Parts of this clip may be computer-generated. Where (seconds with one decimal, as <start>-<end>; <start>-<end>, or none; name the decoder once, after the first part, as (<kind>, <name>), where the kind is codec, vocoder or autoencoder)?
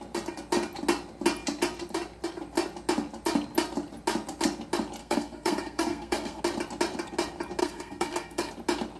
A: 5.0-6.4 (codec, SNAC); 7.6-8.5